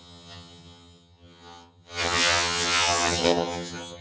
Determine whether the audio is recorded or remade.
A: remade